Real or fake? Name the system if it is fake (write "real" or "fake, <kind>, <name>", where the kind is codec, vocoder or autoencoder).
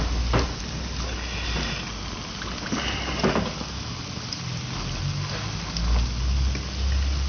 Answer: real